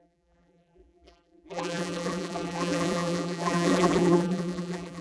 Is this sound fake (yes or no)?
yes